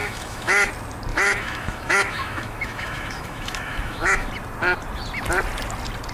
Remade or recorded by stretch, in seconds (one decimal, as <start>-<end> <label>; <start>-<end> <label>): 0.0-0.7 remade; 0.7-1.1 recorded; 1.1-4.3 remade; 4.3-6.1 recorded